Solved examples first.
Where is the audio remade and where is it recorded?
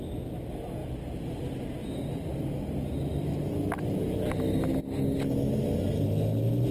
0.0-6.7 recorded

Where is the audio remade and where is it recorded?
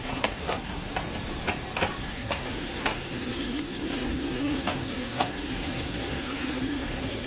0.0-0.9 remade; 0.9-2.0 recorded; 2.0-7.3 remade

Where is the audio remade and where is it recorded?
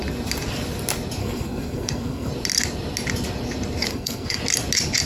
0.0-1.2 recorded; 1.2-2.3 remade; 2.3-3.9 recorded; 3.9-4.4 remade; 4.4-5.1 recorded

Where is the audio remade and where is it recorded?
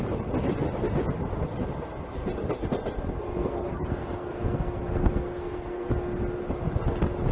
0.0-3.4 recorded; 3.4-5.9 remade; 5.9-7.3 recorded